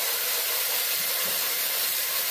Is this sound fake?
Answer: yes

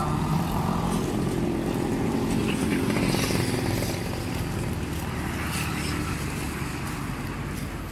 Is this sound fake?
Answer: no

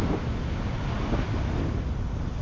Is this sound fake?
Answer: no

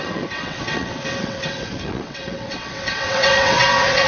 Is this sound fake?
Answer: yes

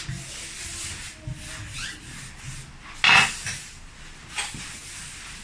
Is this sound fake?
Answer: no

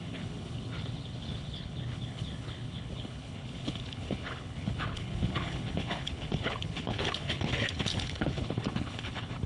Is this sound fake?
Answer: yes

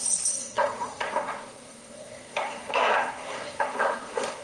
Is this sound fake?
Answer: yes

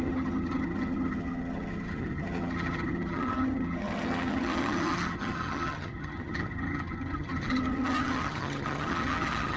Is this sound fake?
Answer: yes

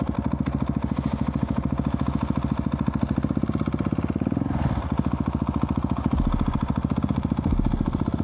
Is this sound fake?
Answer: no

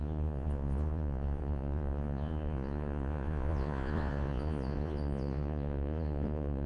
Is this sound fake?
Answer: yes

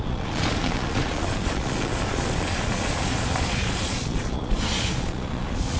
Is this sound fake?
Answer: yes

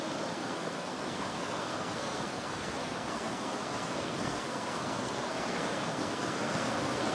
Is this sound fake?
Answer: yes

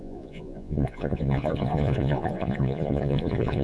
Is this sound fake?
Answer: yes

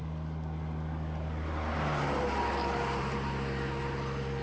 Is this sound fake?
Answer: no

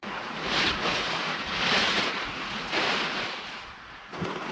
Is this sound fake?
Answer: yes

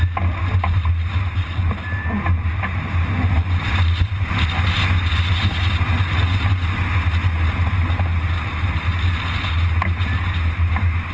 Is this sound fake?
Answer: no